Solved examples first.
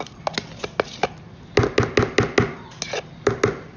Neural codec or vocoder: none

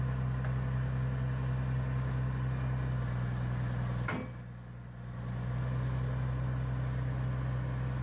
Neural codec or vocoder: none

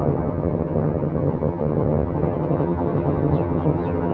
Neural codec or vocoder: vocoder, HiFi-GAN